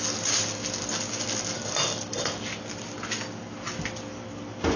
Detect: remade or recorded recorded